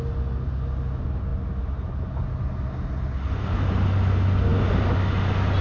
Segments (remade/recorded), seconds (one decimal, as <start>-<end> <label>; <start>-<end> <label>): 0.0-5.6 recorded